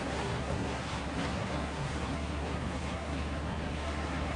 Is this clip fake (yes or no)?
yes